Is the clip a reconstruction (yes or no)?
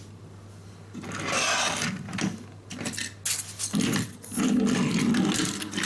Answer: no